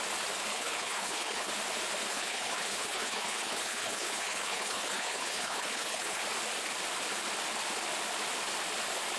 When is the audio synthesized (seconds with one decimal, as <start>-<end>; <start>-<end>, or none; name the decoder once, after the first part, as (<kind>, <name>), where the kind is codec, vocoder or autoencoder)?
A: 0.5-1.5 (codec, HILCodec); 2.1-6.2